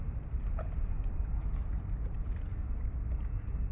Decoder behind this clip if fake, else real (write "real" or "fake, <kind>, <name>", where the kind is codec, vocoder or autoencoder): real